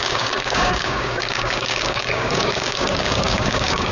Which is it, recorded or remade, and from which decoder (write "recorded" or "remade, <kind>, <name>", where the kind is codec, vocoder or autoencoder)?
remade, codec, DAC